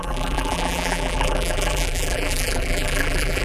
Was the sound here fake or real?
fake